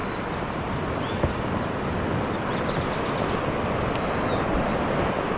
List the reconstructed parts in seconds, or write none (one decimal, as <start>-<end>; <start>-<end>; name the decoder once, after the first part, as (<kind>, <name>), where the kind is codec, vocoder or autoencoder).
none